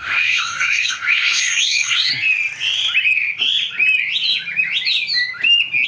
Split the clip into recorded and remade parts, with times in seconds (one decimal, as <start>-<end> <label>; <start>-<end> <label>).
0.0-2.1 remade; 2.1-5.9 recorded